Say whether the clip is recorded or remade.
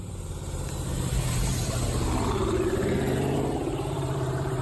remade